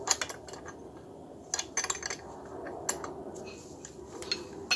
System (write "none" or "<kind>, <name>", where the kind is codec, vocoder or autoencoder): none